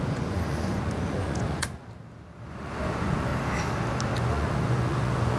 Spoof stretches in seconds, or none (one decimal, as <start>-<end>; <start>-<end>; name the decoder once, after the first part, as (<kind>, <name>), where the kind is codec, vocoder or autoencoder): 0.0-1.8 (vocoder, Vocos); 2.5-3.3; 4.2-5.4